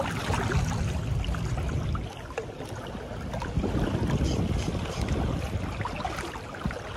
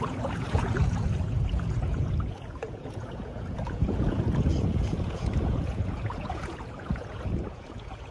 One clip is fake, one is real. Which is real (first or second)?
first